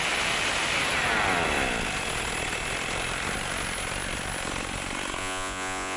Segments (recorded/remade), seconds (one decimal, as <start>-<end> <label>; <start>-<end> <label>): 0.0-5.2 recorded; 5.2-6.0 remade